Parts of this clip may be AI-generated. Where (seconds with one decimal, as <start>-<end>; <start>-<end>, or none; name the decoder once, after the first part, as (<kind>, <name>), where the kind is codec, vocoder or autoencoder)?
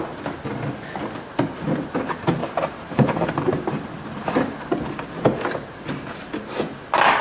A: 2.4-3.6 (vocoder, BigVGAN v2)